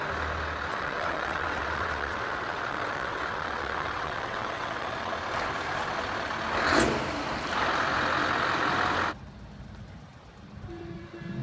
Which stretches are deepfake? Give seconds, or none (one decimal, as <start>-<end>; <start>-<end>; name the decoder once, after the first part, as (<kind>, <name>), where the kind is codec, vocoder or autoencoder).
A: 0.7-5.1 (vocoder, WaveNeXt)